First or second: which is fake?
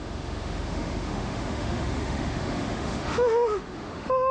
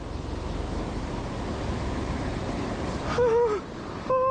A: first